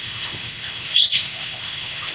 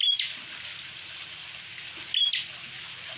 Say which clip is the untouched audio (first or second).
second